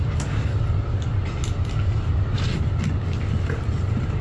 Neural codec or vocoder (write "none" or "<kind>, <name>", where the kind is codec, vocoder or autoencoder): none